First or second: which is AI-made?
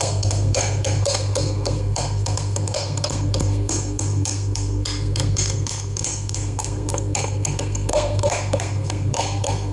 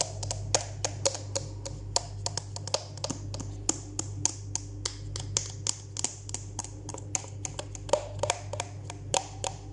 first